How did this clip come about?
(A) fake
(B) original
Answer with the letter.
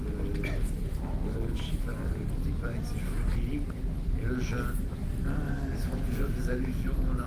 B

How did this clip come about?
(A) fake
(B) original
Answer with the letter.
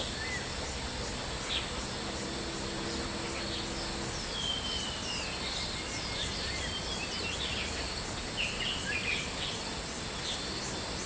B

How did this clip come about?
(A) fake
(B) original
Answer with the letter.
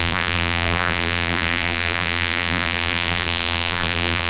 A